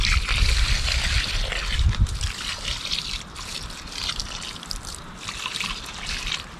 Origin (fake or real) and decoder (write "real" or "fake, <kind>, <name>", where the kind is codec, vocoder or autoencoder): fake, vocoder, BigVGAN v2